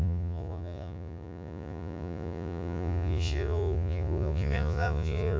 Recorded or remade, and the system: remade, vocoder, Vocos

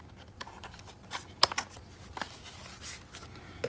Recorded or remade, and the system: recorded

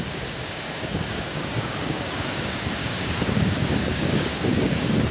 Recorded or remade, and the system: remade, codec, DAC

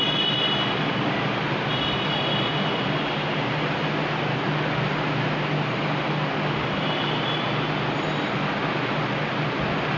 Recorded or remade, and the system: recorded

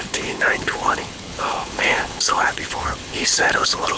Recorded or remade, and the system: remade, codec, HILCodec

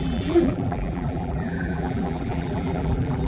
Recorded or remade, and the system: remade, vocoder, BigVGAN v2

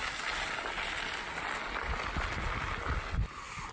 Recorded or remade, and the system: recorded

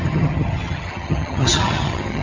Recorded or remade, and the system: remade, vocoder, HiFi-GAN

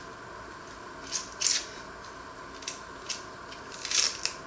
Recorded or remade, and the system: recorded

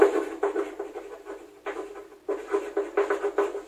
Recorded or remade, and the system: recorded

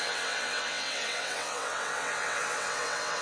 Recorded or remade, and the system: remade, vocoder, WaveNeXt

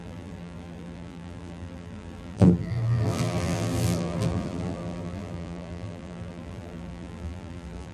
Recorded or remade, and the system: remade, vocoder, BigVGAN v2